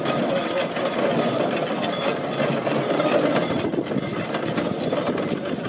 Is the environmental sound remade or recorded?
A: recorded